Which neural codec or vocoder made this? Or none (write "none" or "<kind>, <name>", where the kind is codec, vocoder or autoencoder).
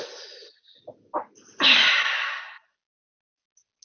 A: none